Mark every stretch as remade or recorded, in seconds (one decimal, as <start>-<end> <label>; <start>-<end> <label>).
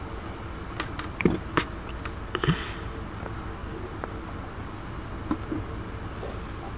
0.0-6.8 recorded